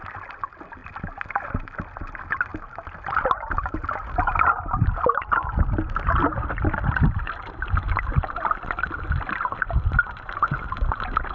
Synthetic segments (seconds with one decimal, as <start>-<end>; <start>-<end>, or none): none